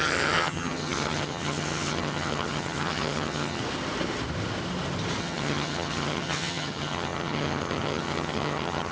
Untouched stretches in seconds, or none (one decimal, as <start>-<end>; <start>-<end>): 3.6-5.2